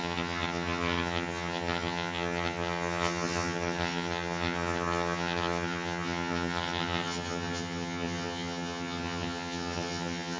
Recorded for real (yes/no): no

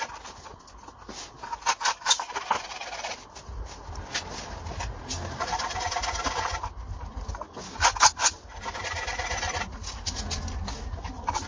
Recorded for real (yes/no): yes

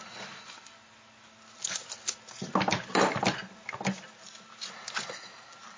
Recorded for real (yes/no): yes